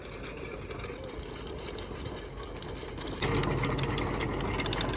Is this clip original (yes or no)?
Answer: yes